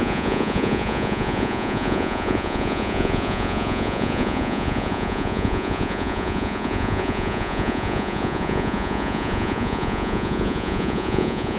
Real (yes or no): no